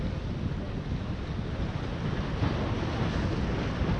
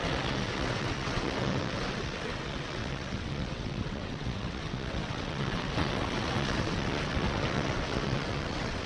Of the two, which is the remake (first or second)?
second